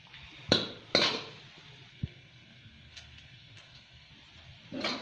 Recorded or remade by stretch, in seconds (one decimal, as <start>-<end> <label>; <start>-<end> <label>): 0.0-1.9 recorded; 1.9-4.1 remade; 4.1-5.0 recorded